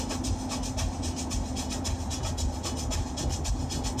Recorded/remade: recorded